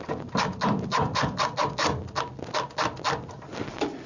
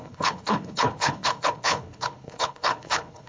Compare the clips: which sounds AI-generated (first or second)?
second